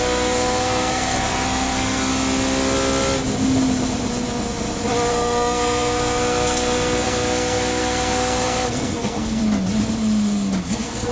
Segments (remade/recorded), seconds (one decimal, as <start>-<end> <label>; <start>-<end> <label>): 0.0-2.1 remade; 2.1-5.1 recorded; 5.1-9.4 remade; 9.4-10.6 recorded; 10.6-11.1 remade